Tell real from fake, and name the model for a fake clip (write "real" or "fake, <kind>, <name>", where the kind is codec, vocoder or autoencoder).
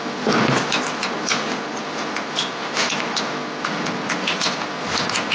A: real